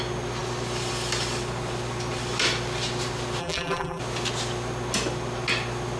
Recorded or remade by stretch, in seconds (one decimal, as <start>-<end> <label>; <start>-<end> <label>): 0.0-3.4 recorded; 3.4-4.0 remade; 4.0-6.0 recorded